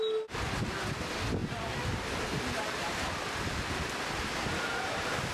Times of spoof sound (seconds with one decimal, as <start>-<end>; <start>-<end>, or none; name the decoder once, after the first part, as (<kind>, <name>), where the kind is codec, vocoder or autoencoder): none